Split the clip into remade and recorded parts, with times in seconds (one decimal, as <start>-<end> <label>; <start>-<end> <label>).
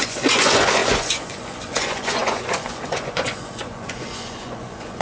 0.0-5.0 remade